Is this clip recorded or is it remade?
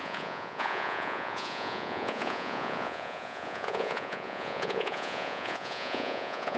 remade